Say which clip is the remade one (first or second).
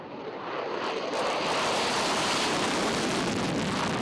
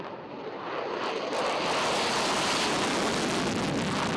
first